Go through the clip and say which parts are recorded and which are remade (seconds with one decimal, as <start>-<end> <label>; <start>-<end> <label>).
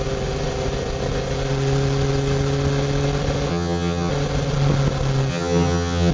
0.0-3.5 recorded; 3.5-4.1 remade; 4.1-5.3 recorded; 5.3-6.1 remade